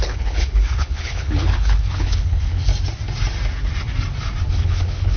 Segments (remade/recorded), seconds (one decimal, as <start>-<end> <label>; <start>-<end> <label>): 0.0-2.7 remade; 2.7-4.5 recorded; 4.5-5.2 remade